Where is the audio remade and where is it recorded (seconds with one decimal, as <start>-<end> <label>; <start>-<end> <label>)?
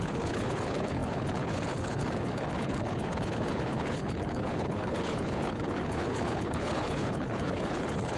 0.0-8.2 remade